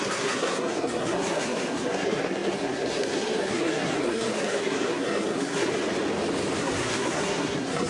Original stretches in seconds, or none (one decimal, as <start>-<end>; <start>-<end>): 5.7-6.6